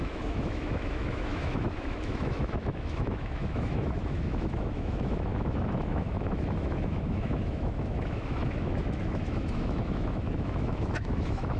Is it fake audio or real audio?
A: fake